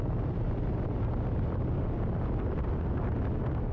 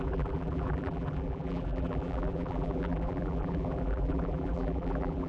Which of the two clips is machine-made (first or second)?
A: second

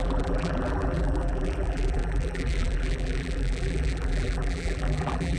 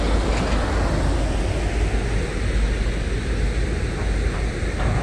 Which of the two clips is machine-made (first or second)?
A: first